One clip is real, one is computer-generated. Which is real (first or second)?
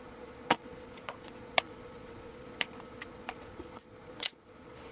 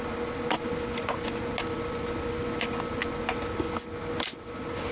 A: second